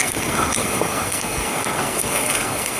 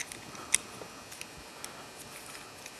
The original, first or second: second